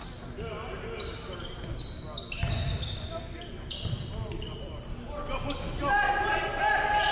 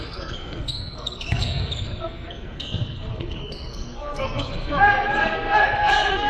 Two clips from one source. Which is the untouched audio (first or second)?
first